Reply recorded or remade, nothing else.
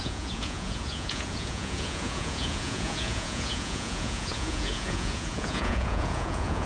remade